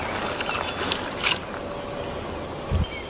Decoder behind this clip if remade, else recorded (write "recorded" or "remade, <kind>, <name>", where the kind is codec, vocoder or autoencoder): recorded